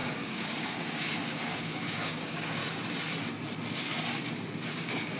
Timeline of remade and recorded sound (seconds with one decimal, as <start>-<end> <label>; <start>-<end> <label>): 0.0-2.6 remade; 2.6-4.7 recorded; 4.7-5.2 remade